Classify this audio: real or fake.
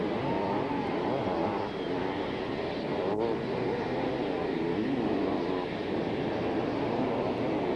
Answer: real